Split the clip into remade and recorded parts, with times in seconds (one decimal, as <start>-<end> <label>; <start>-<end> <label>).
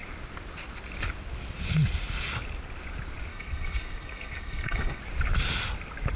0.0-3.3 recorded; 3.3-5.0 remade; 5.0-6.2 recorded